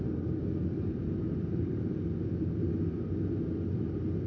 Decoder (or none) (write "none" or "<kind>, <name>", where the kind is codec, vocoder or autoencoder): none